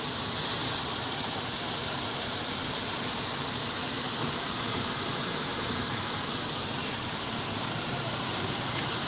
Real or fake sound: fake